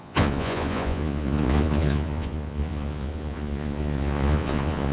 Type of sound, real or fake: fake